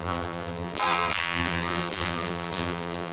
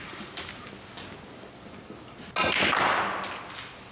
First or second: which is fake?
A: first